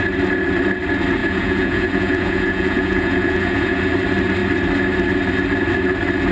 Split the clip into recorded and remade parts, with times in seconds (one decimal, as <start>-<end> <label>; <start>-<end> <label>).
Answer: 0.0-1.2 recorded; 1.2-3.8 remade; 3.8-6.3 recorded